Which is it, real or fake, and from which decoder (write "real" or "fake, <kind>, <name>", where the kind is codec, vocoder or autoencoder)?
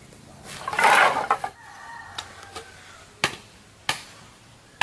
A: real